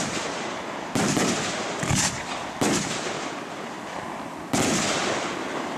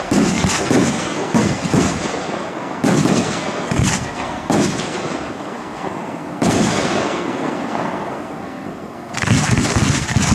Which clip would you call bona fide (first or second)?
first